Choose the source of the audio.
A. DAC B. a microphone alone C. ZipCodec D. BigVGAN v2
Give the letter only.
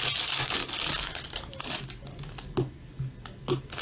B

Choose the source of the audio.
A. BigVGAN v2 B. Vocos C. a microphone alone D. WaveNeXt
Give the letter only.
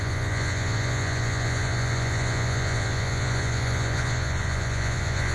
B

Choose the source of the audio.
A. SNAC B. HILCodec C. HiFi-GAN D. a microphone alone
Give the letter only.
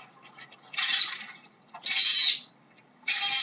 D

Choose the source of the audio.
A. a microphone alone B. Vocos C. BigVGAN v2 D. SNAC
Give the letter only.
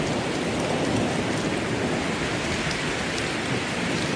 A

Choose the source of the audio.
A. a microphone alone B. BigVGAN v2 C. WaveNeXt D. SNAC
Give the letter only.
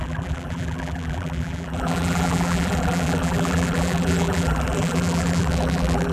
B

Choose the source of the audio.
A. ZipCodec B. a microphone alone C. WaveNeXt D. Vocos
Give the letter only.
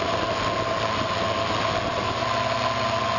B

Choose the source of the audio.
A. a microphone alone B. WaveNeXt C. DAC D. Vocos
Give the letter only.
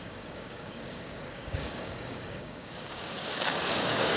C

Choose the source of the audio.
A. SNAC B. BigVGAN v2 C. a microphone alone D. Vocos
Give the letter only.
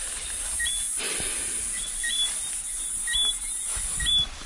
C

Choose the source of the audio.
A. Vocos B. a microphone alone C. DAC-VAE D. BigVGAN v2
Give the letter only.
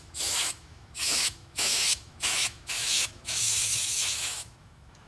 C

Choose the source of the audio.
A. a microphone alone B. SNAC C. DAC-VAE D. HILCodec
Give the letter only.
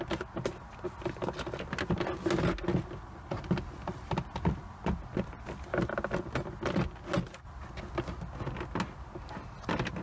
A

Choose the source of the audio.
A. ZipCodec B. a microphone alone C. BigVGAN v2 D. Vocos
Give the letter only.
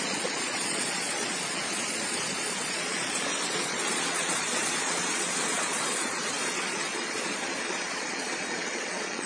D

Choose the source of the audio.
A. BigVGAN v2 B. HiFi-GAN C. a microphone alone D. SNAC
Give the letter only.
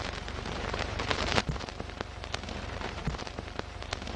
A